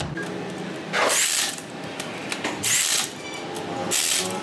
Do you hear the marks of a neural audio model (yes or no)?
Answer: no